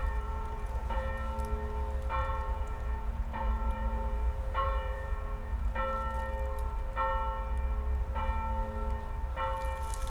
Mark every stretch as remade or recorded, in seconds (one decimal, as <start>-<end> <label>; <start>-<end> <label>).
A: 0.0-1.1 remade; 1.1-2.2 recorded; 2.2-5.7 remade; 5.7-10.1 recorded